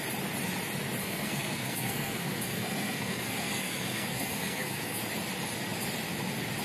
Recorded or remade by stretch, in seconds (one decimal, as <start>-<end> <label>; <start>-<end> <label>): 0.0-1.0 recorded; 1.0-5.0 remade; 5.0-6.6 recorded